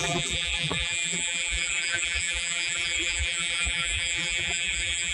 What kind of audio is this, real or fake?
fake